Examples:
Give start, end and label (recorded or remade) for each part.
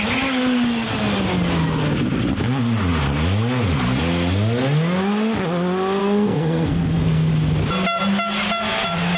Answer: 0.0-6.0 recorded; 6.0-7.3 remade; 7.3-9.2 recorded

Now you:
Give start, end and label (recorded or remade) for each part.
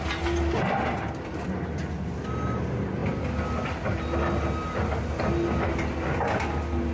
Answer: 0.0-6.9 recorded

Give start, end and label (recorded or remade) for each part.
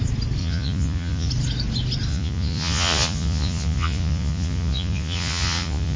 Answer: 0.0-0.4 recorded; 0.4-1.3 remade; 1.3-2.1 recorded; 2.1-6.0 remade